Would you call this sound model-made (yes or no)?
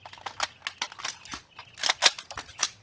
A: no